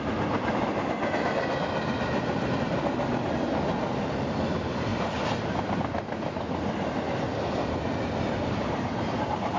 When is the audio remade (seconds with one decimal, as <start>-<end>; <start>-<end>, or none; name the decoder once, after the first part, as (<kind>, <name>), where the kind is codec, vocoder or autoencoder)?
none